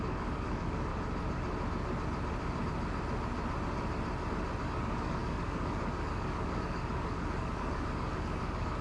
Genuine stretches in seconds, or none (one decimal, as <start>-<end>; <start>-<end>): 0.9-4.6